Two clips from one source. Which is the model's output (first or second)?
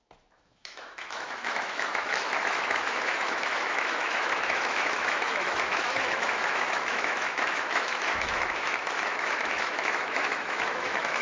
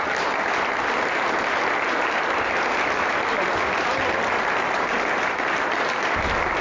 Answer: first